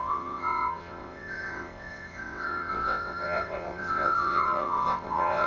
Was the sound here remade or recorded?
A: remade